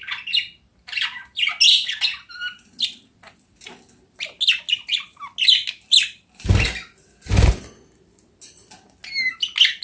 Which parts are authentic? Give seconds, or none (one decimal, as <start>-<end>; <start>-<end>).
0.0-9.8